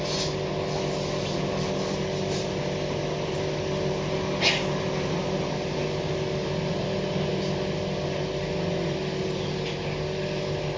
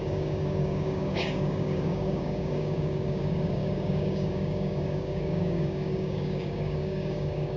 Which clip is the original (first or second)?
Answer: first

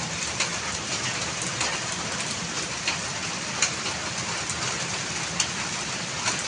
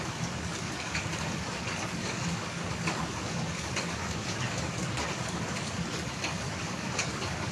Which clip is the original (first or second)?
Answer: first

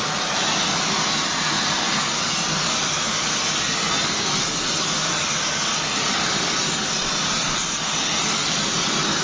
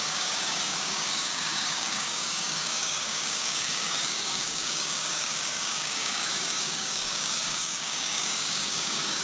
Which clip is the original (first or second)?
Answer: first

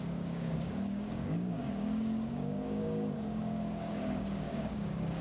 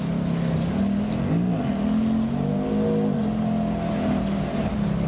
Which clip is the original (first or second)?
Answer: second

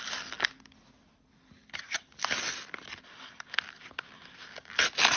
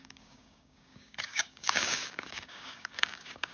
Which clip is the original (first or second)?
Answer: first